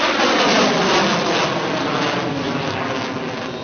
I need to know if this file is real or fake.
real